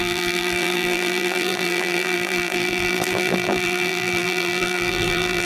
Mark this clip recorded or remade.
remade